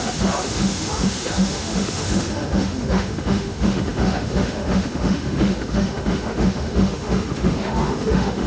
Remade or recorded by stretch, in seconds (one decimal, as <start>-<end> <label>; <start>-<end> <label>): 0.0-8.5 remade

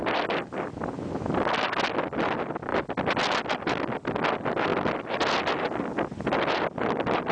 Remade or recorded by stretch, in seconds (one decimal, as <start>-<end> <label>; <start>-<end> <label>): 0.0-7.3 recorded

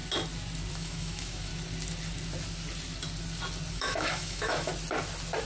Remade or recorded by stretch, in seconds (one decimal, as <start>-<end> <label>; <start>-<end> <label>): 0.0-0.7 recorded; 0.7-1.5 remade; 1.5-3.7 recorded; 3.7-4.7 remade; 4.7-5.4 recorded

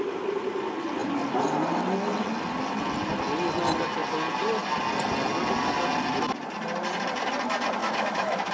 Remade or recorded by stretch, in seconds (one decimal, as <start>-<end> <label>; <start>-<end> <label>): 0.0-7.8 recorded; 7.8-8.5 remade

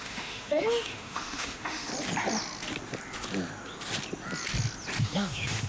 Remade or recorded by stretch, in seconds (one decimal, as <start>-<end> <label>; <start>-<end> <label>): 0.0-1.9 remade; 1.9-5.0 recorded; 5.0-5.7 remade